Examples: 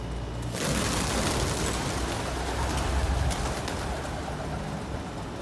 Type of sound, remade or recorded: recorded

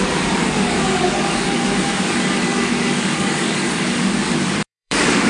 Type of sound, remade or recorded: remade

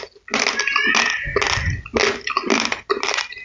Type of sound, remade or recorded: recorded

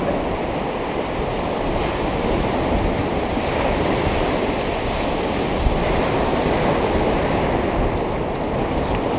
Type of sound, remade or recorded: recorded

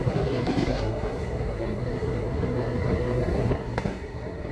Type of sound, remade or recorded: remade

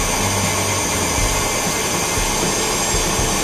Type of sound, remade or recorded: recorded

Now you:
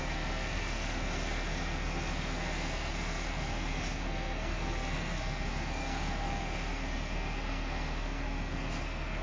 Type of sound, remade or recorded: remade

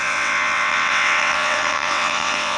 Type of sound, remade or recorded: remade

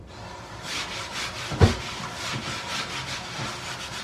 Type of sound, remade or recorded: recorded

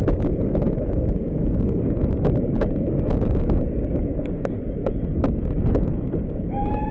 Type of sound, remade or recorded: remade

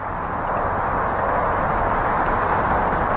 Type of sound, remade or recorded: recorded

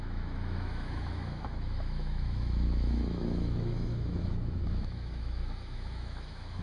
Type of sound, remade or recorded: remade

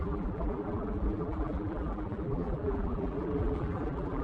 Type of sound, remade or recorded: remade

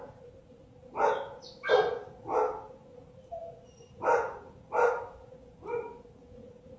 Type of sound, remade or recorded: recorded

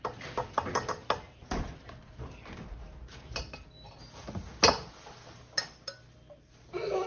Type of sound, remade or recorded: recorded